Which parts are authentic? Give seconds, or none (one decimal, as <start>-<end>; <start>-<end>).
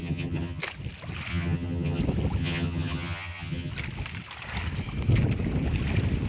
0.6-1.3; 2.0-2.4; 3.7-6.3